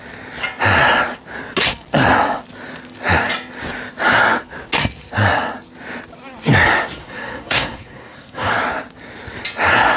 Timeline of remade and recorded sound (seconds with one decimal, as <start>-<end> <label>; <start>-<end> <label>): 0.0-7.0 recorded; 7.0-8.5 remade; 8.5-10.0 recorded